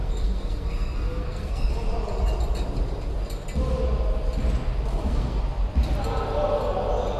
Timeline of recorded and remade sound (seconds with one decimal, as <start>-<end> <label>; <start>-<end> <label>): 0.0-1.7 remade; 1.7-4.9 recorded; 4.9-5.4 remade; 5.4-7.2 recorded